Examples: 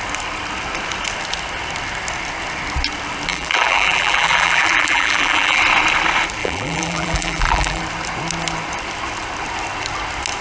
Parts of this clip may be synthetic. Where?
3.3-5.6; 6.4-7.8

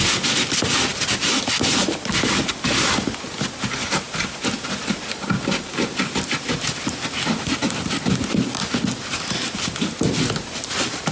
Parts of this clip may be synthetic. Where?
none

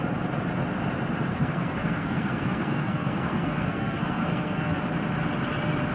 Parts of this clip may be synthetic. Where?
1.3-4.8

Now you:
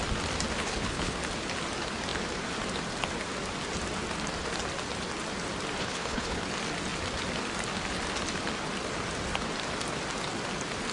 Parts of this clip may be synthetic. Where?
0.6-1.2; 5.8-6.4